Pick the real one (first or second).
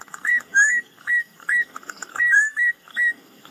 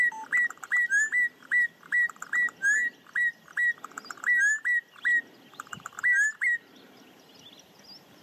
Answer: second